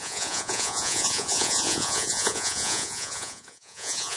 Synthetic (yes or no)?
yes